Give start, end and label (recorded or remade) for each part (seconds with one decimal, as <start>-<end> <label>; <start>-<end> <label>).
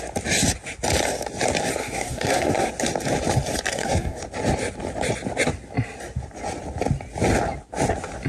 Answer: 0.0-1.8 recorded; 1.8-2.7 remade; 2.7-3.7 recorded; 3.7-4.2 remade; 4.2-8.3 recorded